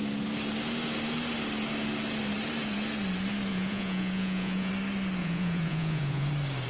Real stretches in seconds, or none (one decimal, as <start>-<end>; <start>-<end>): 0.0-3.5; 4.7-5.2; 6.3-6.7